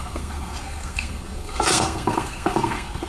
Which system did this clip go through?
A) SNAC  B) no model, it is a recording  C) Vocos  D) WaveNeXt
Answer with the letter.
A